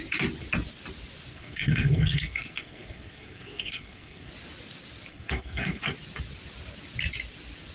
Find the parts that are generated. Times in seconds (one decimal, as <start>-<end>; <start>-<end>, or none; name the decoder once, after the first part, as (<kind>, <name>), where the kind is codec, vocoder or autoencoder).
1.3-4.3 (codec, SNAC); 5.1-5.8